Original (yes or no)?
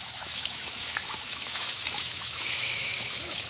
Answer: no